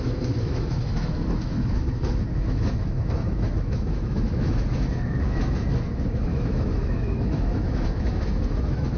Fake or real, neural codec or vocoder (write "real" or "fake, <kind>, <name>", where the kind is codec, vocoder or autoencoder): fake, autoencoder, DAC-VAE